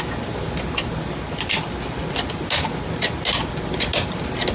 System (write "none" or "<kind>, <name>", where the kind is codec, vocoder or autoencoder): none